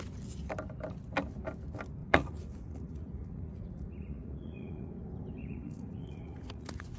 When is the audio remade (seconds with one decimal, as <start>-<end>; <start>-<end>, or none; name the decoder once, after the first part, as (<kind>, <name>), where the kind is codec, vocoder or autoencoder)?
2.0-4.9 (vocoder, Vocos); 5.4-7.0